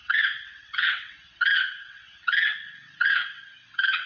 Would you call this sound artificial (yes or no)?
yes